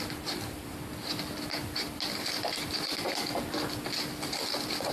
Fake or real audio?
real